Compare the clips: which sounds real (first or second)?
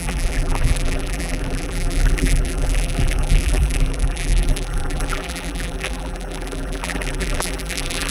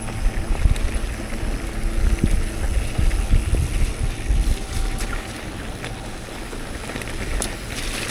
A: second